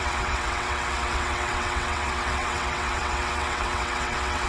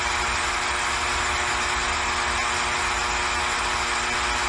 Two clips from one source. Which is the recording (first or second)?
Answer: second